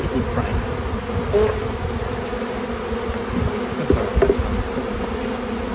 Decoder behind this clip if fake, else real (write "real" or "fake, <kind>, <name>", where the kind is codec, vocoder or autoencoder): real